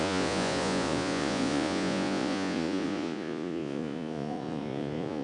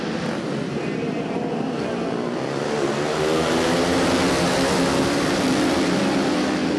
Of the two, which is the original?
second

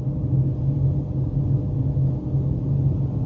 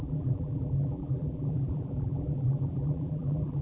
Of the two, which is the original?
first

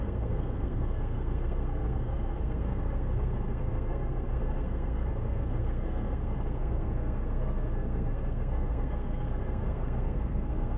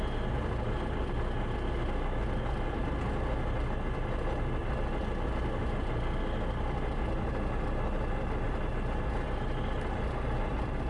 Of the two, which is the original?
second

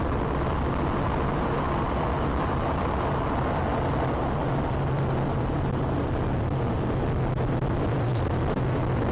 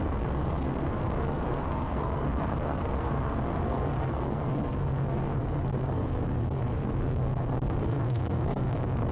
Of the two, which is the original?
first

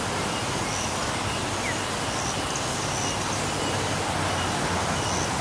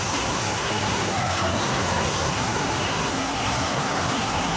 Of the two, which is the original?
first